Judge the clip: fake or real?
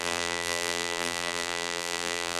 fake